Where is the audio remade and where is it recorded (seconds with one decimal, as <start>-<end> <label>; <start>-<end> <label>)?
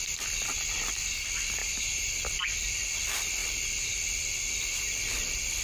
0.0-1.6 recorded; 1.6-2.1 remade; 2.1-5.6 recorded